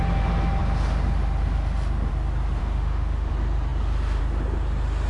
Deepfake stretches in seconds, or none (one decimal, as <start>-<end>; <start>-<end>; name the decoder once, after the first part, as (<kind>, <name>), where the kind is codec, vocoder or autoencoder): 2.6-3.3 (autoencoder, DAC-VAE)